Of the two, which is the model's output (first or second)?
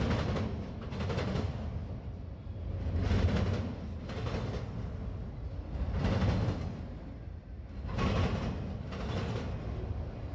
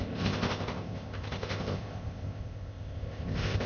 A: second